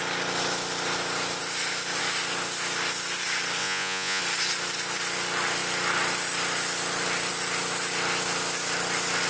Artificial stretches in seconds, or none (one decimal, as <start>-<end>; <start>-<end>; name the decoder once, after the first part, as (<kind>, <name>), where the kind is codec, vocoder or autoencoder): 3.6-4.2 (vocoder, Vocos)